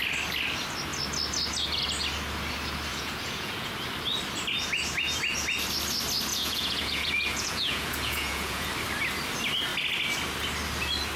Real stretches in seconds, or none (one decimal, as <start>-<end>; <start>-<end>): 0.0-2.9; 3.7-6.3; 8.7-11.2